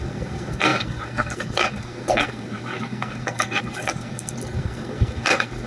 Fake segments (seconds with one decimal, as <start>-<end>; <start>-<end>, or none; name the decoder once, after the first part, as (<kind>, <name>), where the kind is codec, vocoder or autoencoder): 0.0-5.7 (codec, SNAC)